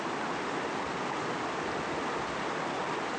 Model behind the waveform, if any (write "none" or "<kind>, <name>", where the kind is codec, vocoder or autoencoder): none